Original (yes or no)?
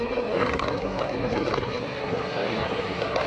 no